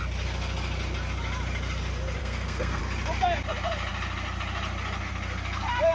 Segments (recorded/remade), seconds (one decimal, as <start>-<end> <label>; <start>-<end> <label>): 0.0-2.2 recorded; 2.2-2.8 remade; 2.8-5.9 recorded